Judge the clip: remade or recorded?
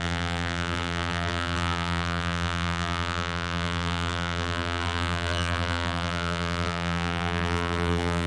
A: remade